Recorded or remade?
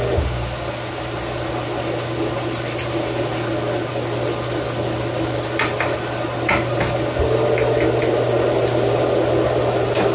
recorded